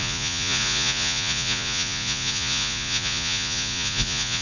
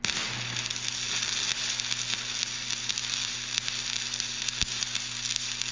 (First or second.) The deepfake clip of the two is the first